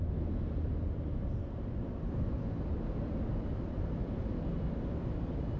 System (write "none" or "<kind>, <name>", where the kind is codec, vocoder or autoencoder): none